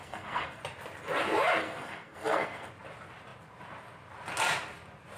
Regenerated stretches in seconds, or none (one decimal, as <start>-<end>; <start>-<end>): 0.0-0.6; 1.6-2.7